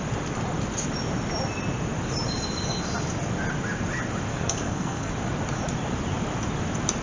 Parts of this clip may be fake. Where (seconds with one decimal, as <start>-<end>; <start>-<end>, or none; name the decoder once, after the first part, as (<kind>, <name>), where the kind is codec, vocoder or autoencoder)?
4.3-5.1 (codec, SNAC)